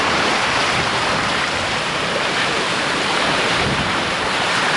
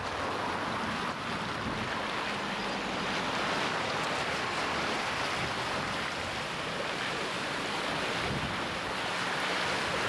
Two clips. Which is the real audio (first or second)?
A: second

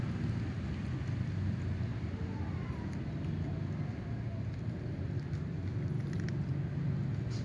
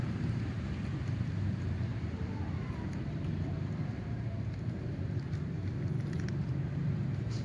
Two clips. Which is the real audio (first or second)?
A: first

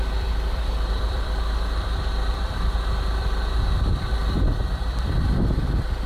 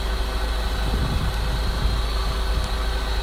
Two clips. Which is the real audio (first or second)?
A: second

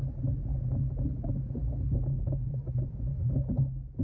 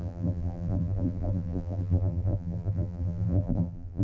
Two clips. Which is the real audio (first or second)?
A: first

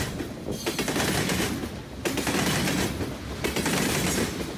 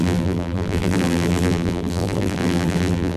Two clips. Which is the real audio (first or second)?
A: first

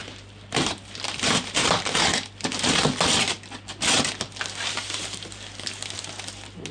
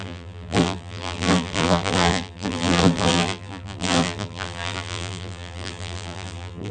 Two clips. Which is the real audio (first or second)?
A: first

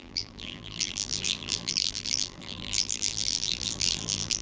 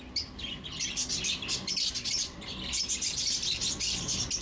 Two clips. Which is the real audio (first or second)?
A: second